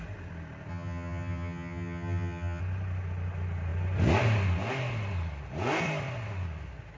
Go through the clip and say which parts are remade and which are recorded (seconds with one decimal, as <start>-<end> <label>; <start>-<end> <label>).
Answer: 0.0-0.7 recorded; 0.7-2.6 remade; 2.6-7.0 recorded